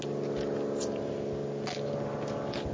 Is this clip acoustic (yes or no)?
yes